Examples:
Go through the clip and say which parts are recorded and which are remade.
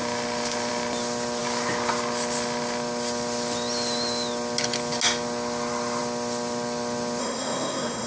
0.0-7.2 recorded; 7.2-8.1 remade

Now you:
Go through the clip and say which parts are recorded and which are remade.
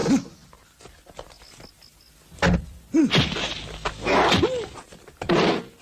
0.0-5.8 recorded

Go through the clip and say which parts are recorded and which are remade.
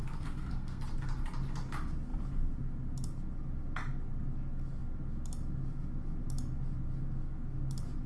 0.0-0.8 remade; 0.8-8.1 recorded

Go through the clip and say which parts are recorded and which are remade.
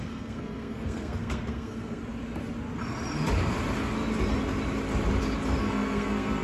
0.0-2.0 remade; 2.0-5.6 recorded; 5.6-6.4 remade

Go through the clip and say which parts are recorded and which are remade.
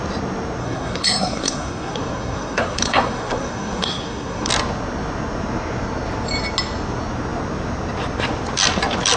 0.0-0.6 recorded; 0.6-4.5 remade; 4.5-9.2 recorded